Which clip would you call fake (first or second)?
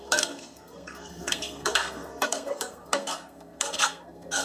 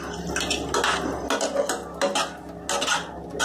first